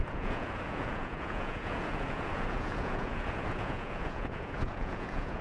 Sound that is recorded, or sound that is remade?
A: remade